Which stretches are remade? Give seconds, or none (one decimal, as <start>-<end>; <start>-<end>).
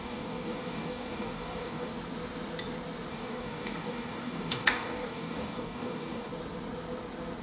0.0-1.9; 3.1-6.3